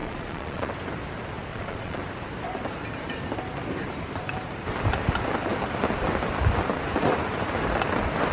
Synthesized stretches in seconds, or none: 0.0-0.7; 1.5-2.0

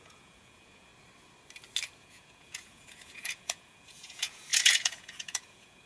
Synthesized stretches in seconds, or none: 0.0-0.9; 2.0-5.9

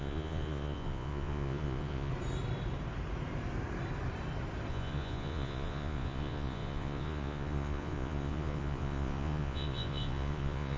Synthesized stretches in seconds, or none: 0.0-2.1; 4.7-10.8

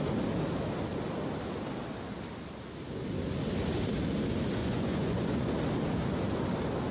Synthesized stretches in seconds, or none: 4.6-5.5

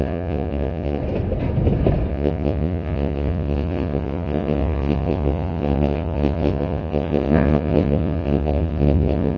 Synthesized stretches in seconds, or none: 0.0-1.0; 2.1-9.4

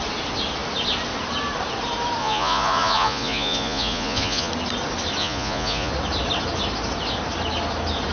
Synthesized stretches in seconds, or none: 2.2-4.5; 5.2-5.9

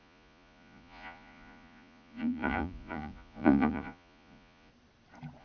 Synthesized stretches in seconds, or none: 0.0-4.7

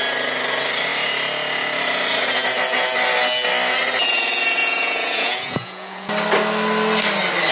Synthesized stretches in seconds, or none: 4.6-6.1